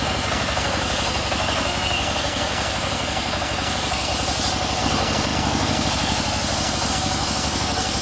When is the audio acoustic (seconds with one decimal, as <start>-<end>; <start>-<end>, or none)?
4.1-4.8